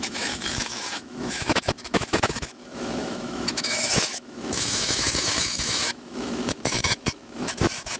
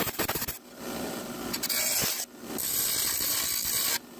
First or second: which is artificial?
first